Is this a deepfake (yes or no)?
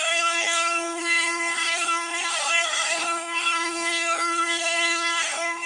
yes